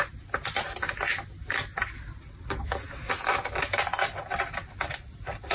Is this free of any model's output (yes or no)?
yes